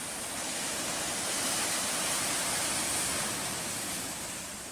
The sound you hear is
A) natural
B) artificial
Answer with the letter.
A